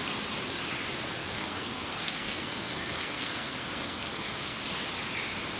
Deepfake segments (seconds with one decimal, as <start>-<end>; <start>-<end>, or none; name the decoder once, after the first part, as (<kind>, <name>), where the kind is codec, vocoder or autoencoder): 1.2-4.6 (codec, SNAC)